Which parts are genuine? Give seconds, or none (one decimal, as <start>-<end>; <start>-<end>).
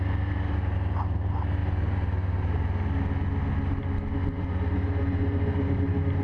0.0-6.2